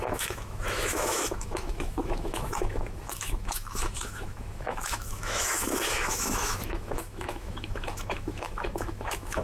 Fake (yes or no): yes